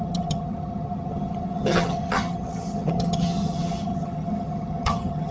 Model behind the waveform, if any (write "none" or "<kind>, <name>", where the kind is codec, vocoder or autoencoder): vocoder, HiFi-GAN